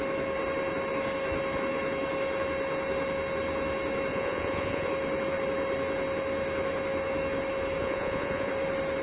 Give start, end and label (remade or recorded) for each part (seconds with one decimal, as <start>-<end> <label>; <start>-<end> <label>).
0.0-4.1 recorded; 4.1-4.9 remade; 4.9-7.8 recorded; 7.8-8.5 remade; 8.5-9.0 recorded